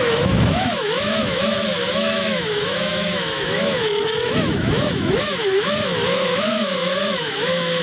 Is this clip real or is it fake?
fake